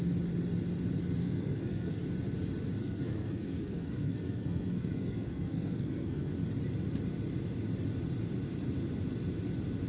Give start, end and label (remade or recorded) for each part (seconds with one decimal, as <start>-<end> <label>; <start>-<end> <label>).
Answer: 0.0-1.2 recorded; 1.2-2.0 remade; 2.0-2.8 recorded; 2.8-6.3 remade; 6.3-9.9 recorded